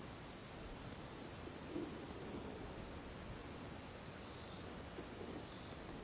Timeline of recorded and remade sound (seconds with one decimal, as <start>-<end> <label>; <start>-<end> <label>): 0.0-3.4 recorded; 3.4-5.4 remade; 5.4-6.0 recorded